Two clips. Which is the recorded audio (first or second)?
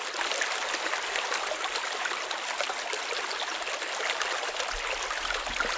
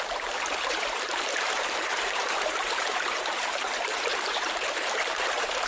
first